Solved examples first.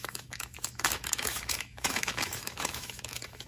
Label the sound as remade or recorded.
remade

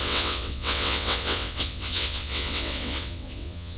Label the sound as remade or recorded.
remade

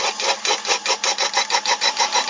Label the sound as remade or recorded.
remade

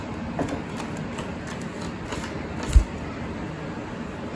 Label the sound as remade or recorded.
recorded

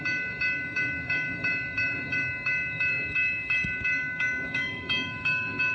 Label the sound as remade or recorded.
remade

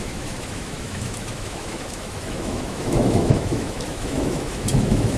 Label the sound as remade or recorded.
remade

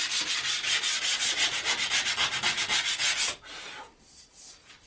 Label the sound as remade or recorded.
recorded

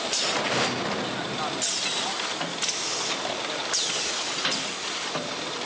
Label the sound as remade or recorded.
recorded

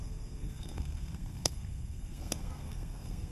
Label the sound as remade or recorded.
remade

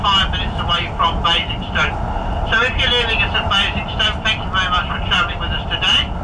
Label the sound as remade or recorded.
recorded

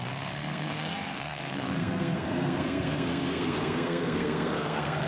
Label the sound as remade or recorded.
remade